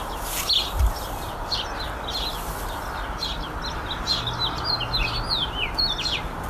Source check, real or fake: real